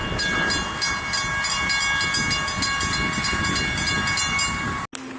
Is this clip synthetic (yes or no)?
no